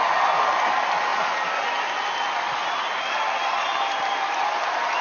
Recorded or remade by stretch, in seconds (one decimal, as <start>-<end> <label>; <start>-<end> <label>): 0.0-5.0 recorded